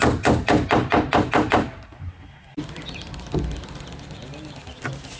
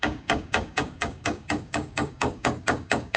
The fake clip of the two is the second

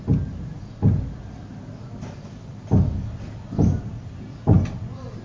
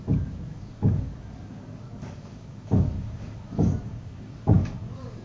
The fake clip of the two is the second